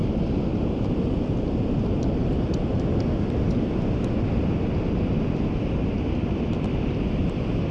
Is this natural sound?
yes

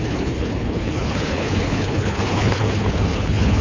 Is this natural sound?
no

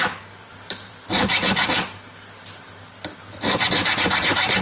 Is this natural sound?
no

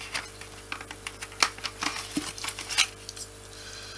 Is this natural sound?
yes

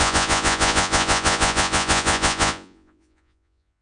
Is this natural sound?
no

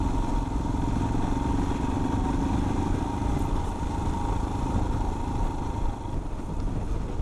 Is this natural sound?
yes